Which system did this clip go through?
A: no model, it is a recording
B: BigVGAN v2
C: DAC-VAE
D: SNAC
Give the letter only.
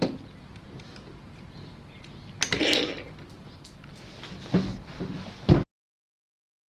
A